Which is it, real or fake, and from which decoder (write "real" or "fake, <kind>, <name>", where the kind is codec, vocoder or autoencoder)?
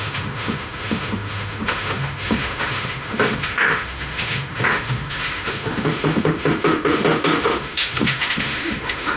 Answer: fake, autoencoder, DAC-VAE